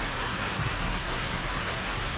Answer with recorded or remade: remade